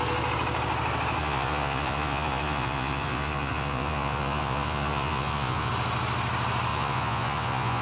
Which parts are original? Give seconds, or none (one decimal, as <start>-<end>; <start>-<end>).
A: 0.0-1.2; 5.7-6.7